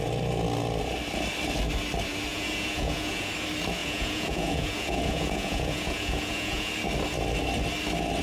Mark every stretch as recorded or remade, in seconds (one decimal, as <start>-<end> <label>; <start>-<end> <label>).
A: 0.0-2.3 recorded; 2.3-3.3 remade; 3.3-3.8 recorded; 3.8-6.7 remade; 6.7-8.2 recorded